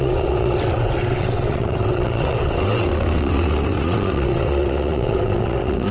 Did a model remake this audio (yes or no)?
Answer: yes